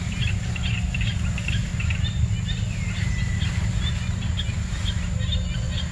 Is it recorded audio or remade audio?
recorded